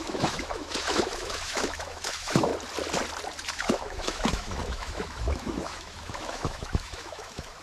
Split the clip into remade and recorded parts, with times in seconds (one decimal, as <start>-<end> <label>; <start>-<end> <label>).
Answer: 0.0-2.5 remade; 2.5-3.5 recorded; 3.5-7.6 remade